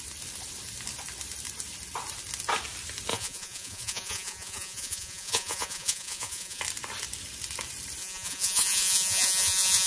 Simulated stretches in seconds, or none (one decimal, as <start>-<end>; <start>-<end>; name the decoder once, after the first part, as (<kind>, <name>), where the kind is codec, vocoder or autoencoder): 3.1-6.6 (vocoder, Vocos); 8.0-9.9